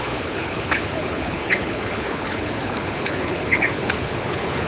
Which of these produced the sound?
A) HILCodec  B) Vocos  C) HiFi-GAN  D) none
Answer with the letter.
A